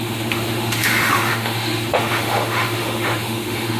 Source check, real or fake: fake